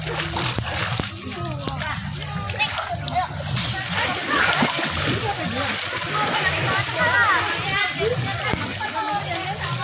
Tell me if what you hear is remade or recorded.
recorded